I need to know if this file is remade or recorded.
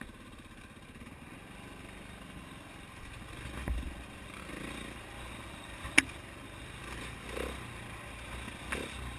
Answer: recorded